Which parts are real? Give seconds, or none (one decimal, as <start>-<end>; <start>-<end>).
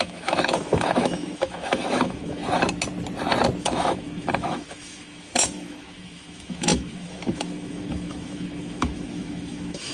2.4-3.6